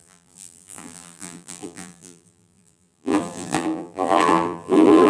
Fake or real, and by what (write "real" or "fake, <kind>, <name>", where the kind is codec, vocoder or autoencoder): fake, vocoder, BigVGAN v2